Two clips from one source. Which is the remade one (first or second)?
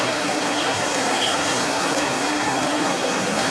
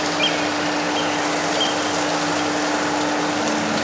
first